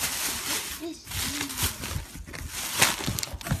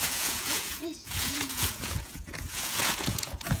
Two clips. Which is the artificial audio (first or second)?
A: second